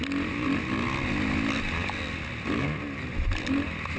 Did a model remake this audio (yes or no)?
no